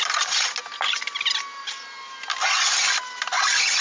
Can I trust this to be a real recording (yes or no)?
yes